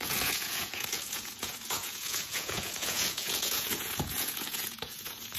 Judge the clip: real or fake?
fake